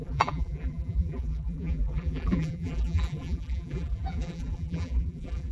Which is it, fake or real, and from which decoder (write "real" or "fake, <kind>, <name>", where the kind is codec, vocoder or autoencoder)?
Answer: fake, vocoder, BigVGAN v2